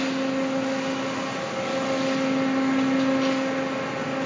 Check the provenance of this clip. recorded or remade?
recorded